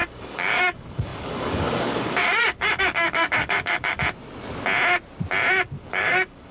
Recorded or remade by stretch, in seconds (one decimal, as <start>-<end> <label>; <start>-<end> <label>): 0.0-4.0 remade; 4.0-5.8 recorded; 5.8-6.5 remade